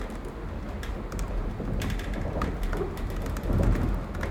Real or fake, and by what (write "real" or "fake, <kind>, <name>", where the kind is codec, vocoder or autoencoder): real